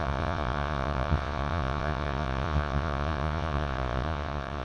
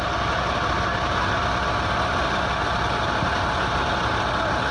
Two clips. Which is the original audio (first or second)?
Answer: second